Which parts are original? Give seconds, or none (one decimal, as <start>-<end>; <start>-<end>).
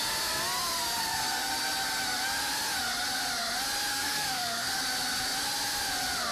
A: 0.0-1.0; 1.5-3.9; 4.8-6.3